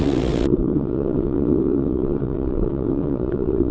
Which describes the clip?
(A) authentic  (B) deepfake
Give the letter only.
B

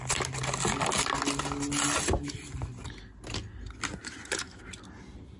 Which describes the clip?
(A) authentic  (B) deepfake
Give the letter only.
A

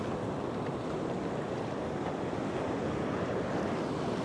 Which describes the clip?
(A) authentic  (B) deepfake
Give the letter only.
A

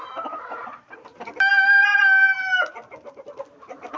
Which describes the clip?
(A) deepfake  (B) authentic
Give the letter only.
A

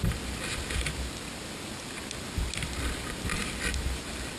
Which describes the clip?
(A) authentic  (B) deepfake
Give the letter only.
A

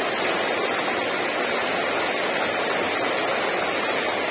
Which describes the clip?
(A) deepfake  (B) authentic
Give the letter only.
B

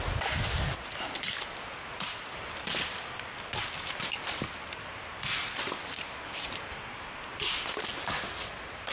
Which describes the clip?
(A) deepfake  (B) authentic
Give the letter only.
B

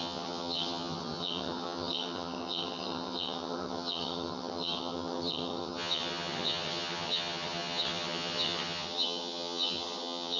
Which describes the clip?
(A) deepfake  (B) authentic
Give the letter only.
A